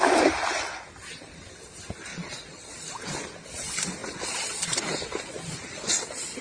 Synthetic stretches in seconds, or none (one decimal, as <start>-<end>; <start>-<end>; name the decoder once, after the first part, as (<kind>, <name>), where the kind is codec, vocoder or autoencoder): 2.1-2.7 (vocoder, Vocos)